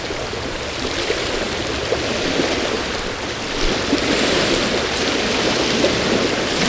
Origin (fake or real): real